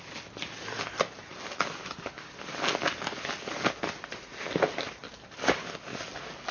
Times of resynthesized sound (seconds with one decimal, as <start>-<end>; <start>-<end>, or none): none